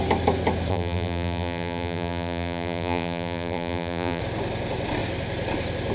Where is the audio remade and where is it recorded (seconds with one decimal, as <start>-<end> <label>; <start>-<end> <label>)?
0.0-0.7 recorded; 0.7-4.2 remade; 4.2-5.9 recorded